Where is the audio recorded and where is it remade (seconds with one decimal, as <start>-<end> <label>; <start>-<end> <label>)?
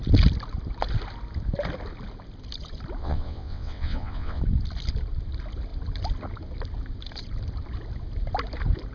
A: 0.0-3.0 recorded; 3.0-4.4 remade; 4.4-8.9 recorded